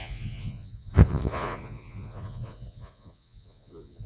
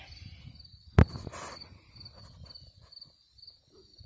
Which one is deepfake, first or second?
first